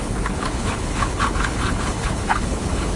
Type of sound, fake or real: fake